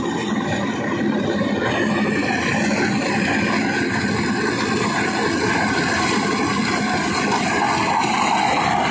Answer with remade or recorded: recorded